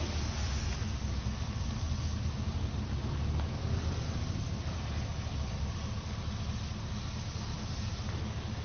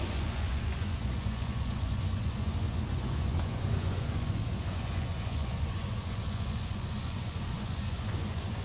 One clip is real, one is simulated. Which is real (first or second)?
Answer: first